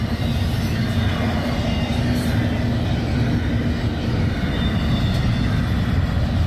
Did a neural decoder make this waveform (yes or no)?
no